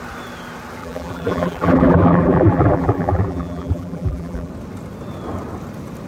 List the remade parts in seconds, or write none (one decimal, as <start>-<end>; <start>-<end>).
0.8-4.5